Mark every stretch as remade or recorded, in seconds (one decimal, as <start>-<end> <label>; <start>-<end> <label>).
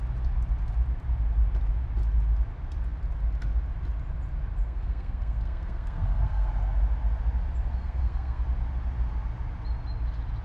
0.0-4.6 recorded; 4.6-6.5 remade; 6.5-7.8 recorded; 7.8-8.4 remade; 8.4-10.4 recorded